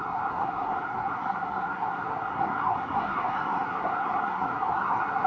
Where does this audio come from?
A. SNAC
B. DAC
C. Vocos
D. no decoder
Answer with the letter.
A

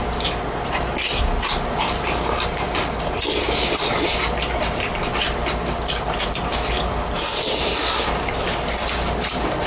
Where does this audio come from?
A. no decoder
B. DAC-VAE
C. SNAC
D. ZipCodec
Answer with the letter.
A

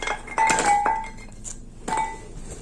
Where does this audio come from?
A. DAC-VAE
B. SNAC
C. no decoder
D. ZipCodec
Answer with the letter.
C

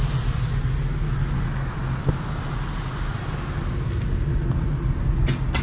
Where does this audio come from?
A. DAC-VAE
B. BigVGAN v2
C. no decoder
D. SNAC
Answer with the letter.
C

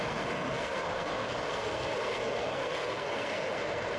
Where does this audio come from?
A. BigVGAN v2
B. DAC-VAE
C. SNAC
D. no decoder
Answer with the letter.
C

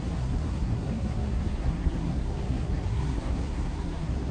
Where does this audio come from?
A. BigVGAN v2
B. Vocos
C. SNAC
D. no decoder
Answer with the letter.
C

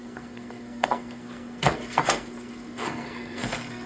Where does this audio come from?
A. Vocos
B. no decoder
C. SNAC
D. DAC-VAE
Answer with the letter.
C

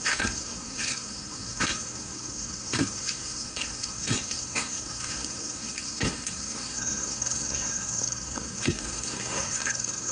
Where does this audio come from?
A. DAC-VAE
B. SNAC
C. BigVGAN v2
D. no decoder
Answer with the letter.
B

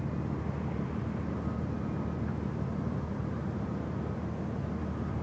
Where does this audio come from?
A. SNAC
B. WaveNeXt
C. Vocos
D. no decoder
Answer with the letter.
D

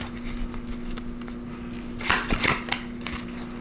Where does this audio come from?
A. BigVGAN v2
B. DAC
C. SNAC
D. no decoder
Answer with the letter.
D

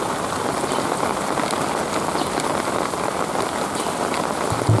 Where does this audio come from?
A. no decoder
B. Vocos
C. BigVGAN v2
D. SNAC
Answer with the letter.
A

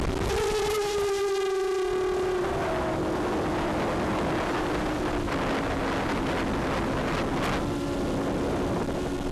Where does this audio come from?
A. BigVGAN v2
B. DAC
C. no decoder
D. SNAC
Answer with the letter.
C